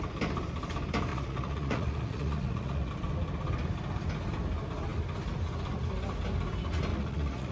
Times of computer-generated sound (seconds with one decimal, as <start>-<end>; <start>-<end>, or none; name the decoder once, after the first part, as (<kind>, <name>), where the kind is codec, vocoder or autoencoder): 1.1-2.9 (vocoder, Vocos); 6.9-7.5

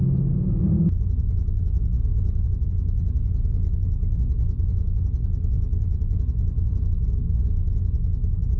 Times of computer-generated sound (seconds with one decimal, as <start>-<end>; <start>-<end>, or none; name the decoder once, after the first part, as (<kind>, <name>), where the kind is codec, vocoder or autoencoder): none